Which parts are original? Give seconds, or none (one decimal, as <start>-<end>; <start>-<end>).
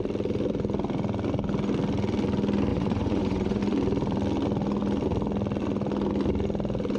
0.0-2.7; 3.6-7.0